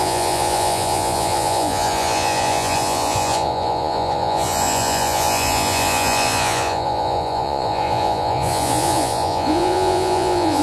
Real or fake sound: fake